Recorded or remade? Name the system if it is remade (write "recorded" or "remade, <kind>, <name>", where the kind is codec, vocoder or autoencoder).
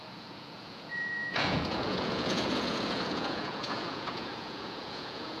remade, vocoder, Vocos